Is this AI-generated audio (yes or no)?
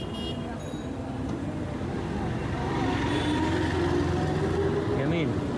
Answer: no